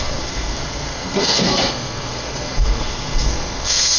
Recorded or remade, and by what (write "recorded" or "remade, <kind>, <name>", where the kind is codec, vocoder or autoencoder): remade, codec, SNAC